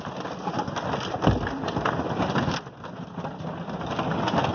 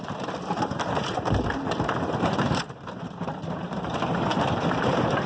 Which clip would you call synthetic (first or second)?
second